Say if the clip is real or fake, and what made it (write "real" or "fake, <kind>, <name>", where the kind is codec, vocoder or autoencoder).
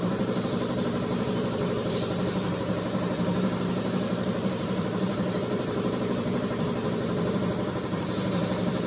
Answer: fake, vocoder, BigVGAN v2